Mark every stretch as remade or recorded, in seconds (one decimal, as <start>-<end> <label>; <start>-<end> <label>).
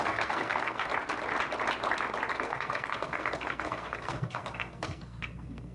0.0-0.9 remade; 0.9-2.3 recorded; 2.3-5.7 remade